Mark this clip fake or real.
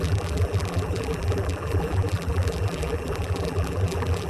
fake